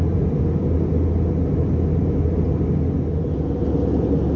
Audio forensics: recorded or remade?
recorded